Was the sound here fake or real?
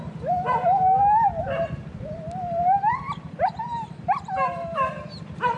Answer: real